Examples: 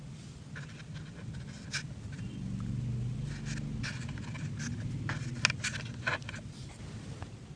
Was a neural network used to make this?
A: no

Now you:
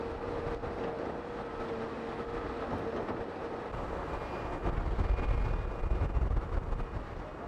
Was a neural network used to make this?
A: no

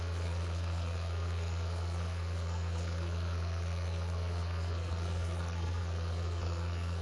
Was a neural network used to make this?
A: yes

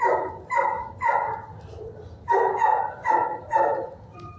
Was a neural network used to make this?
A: no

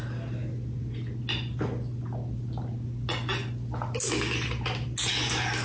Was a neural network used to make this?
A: no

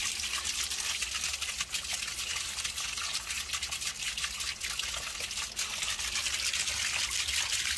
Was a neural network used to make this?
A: no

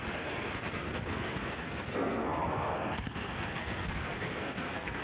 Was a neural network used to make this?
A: yes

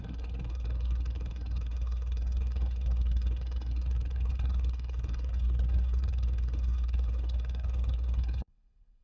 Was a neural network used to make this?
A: yes